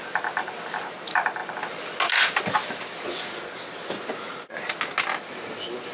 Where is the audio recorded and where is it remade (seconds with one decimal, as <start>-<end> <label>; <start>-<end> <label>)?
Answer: 0.0-5.9 recorded